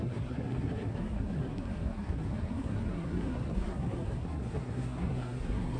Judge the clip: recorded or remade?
remade